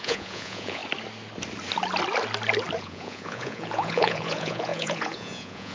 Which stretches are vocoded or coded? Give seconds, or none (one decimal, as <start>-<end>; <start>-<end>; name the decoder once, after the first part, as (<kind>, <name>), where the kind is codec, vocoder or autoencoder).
0.0-0.8 (vocoder, Vocos); 2.8-5.7